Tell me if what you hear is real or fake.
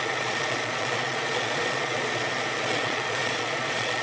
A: fake